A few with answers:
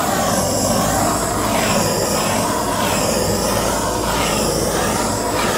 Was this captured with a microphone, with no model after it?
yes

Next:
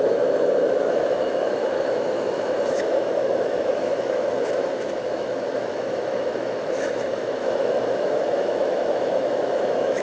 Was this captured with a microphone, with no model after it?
no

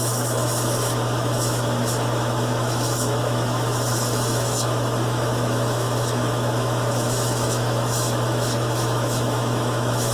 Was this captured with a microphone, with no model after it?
no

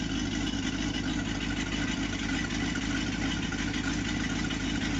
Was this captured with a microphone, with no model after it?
yes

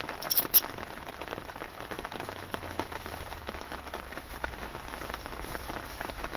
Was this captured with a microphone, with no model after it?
no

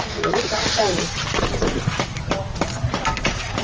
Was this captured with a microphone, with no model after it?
no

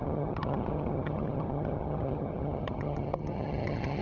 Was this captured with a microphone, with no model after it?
no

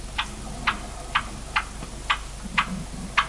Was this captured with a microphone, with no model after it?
yes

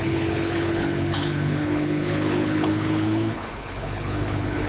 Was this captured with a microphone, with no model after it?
no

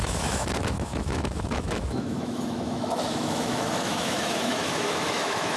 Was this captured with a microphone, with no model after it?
no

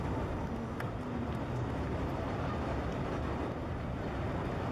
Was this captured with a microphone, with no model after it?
yes